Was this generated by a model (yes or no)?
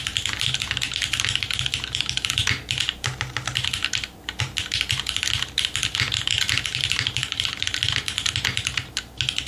no